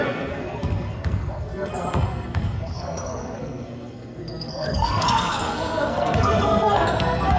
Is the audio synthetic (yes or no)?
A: yes